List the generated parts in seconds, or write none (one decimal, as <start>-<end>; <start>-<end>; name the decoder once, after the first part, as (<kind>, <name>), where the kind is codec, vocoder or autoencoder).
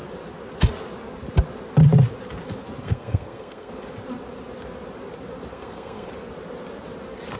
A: 2.8-3.7 (codec, SNAC); 5.5-6.1